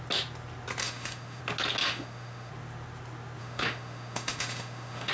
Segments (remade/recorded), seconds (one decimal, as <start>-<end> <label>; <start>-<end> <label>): 0.0-0.8 recorded; 0.8-1.4 remade; 1.4-1.8 recorded; 1.8-2.5 remade; 2.5-3.4 recorded; 3.4-5.1 remade